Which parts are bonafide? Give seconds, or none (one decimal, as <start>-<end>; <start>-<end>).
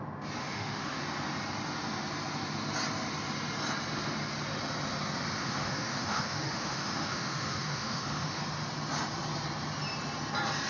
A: 0.0-0.4; 1.0-5.4; 8.4-10.7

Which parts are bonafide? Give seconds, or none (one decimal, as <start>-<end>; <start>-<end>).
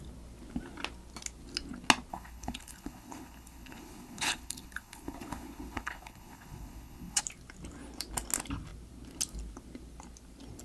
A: 0.0-2.1; 7.2-10.6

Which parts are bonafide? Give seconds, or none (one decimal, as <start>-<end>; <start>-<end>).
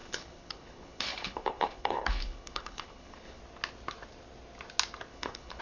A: 3.4-5.1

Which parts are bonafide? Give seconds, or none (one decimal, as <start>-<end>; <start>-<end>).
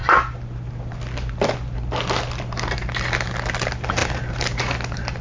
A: 0.0-5.2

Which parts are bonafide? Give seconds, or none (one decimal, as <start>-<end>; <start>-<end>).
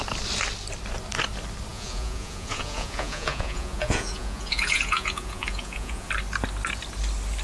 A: 0.0-1.7; 6.1-7.4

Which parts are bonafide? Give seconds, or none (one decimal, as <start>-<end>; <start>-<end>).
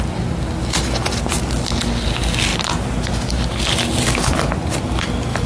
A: 0.0-5.5